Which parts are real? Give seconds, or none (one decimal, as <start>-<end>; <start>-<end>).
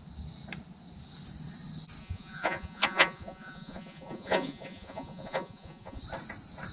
0.0-2.0; 6.0-6.7